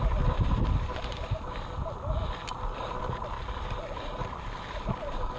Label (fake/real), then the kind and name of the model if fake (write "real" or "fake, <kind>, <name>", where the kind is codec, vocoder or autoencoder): real